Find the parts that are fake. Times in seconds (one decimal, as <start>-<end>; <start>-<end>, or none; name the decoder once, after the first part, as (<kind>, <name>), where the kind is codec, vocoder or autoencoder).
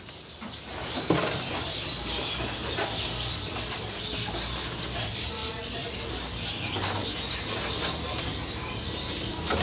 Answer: 2.6-4.0 (vocoder, BigVGAN v2); 5.4-6.1